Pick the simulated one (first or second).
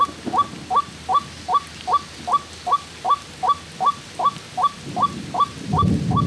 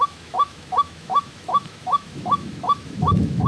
second